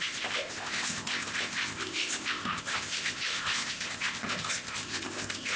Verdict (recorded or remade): remade